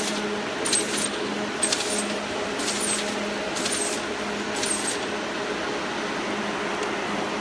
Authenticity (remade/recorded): recorded